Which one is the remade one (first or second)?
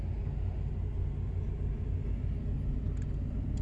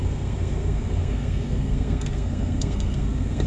second